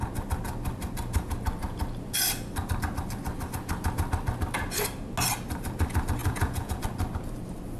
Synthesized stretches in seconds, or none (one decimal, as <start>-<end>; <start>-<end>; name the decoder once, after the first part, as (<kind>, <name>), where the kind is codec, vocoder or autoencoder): 6.2-6.8 (vocoder, Vocos)